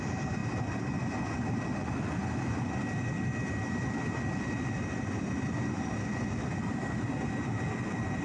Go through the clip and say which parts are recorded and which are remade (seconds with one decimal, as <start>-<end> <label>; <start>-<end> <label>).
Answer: 0.0-8.2 recorded